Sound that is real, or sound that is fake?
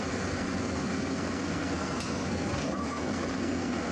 fake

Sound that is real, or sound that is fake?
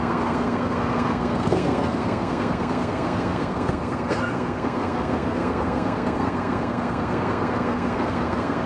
fake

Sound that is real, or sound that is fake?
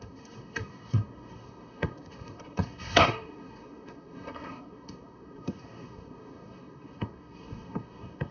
fake